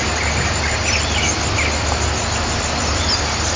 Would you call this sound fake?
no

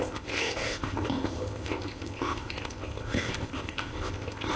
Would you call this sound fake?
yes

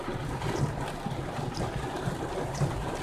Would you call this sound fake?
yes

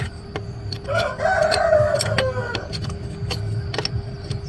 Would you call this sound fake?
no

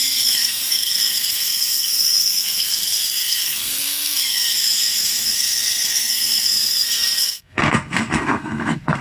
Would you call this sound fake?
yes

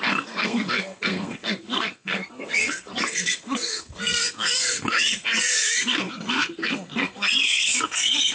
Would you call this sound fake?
yes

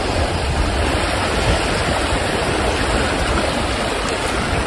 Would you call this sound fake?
yes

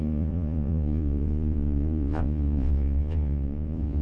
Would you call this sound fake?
yes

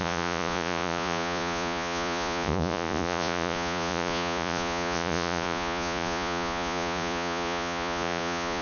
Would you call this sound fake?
yes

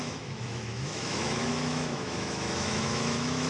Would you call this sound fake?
yes